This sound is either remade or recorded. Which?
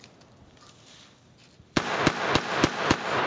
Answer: recorded